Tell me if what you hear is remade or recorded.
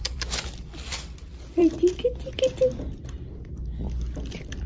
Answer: remade